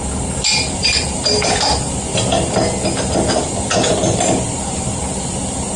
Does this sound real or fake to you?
real